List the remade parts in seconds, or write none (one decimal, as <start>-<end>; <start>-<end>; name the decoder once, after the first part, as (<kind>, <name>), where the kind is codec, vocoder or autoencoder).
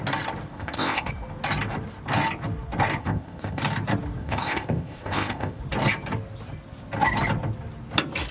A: 0.5-1.1 (codec, ZipCodec); 3.0-3.6; 4.2-5.6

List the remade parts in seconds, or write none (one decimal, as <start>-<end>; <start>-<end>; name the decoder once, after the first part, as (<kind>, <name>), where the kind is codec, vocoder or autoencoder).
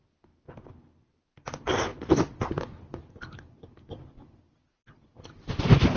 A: none